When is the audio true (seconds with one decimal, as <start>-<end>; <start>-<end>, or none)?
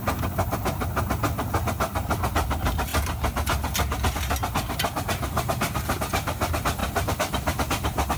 0.0-6.8